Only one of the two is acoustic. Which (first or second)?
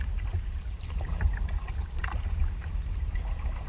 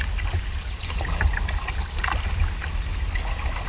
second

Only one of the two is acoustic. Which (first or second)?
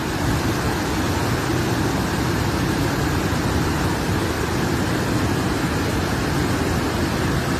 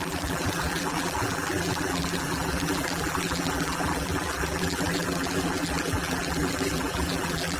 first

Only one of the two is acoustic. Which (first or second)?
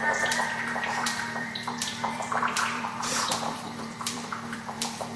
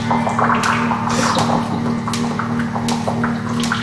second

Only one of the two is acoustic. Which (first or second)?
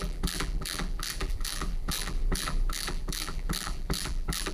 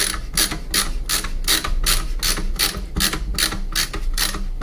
second